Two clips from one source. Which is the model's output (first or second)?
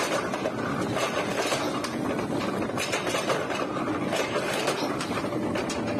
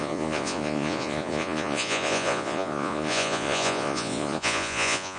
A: second